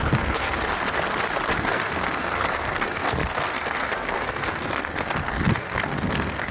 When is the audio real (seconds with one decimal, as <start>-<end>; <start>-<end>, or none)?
0.7-1.6